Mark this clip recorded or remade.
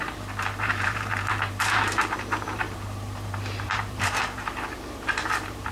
remade